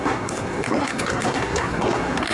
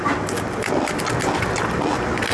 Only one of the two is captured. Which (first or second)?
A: second